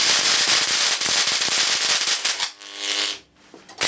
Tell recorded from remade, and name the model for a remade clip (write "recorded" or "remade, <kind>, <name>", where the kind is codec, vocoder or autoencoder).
recorded